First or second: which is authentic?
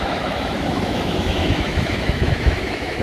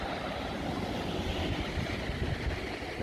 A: second